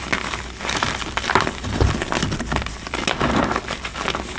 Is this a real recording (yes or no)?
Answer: yes